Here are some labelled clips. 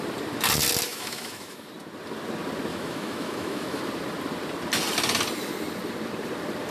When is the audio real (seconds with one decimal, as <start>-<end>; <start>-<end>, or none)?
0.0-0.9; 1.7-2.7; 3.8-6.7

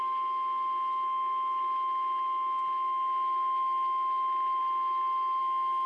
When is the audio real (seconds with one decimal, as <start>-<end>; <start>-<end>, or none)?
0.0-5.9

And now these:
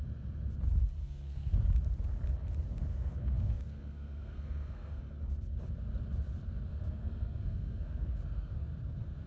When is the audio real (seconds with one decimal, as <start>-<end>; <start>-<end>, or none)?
0.0-1.0; 1.5-2.9; 5.0-6.7; 8.7-9.3

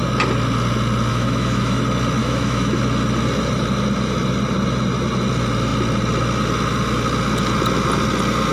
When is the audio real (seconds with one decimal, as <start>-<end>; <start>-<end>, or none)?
0.0-1.1; 1.8-2.2; 2.8-8.5

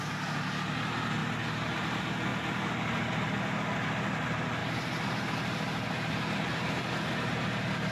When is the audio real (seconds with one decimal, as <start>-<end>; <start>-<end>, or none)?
0.0-7.9

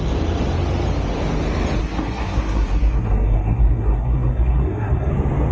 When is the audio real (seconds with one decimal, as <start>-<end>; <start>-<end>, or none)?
0.0-1.8; 5.1-5.5